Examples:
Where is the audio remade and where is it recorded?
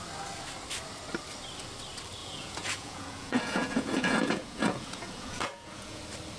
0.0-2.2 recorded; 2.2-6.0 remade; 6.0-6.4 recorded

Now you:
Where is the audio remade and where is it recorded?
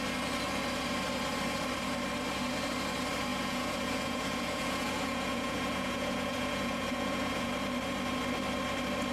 0.0-3.3 recorded; 3.3-7.5 remade; 7.5-9.1 recorded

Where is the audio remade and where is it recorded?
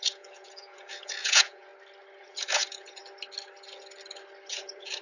0.0-1.7 remade; 1.7-2.2 recorded; 2.2-3.0 remade; 3.0-4.5 recorded; 4.5-5.0 remade